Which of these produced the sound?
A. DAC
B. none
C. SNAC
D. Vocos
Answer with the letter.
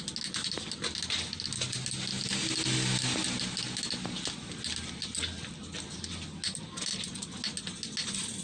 B